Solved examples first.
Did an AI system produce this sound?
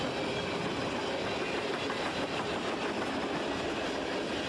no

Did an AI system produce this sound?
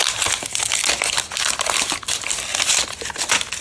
no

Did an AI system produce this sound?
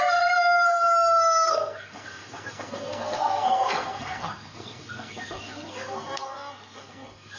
yes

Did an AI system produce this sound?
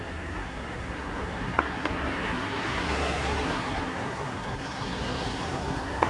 yes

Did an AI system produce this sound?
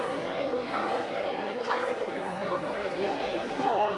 yes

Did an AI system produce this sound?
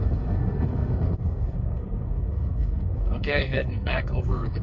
yes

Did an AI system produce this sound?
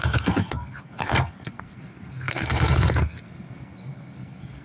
yes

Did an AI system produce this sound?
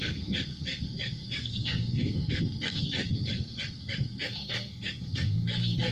yes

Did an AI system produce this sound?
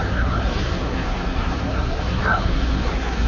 yes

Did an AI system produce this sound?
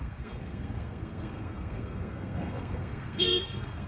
yes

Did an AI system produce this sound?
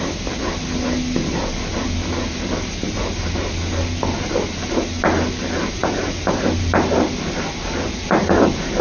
no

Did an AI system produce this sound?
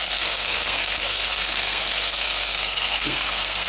yes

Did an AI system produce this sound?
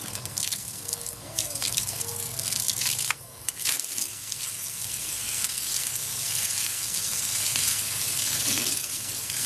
yes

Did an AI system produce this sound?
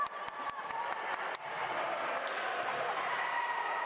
no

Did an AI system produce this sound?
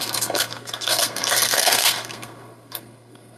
yes